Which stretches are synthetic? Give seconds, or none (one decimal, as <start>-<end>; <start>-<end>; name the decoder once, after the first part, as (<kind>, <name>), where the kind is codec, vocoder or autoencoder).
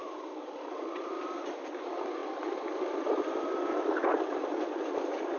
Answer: none